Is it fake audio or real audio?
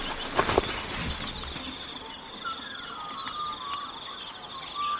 real